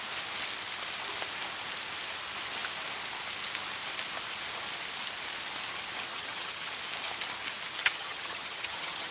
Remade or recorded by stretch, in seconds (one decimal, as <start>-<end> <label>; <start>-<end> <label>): 0.0-6.1 recorded; 6.1-6.7 remade; 6.7-7.8 recorded; 7.8-9.1 remade